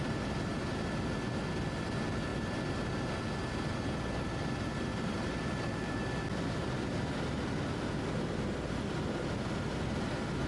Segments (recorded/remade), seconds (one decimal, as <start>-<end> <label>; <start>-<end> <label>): 0.0-4.9 recorded; 4.9-5.9 remade; 5.9-10.5 recorded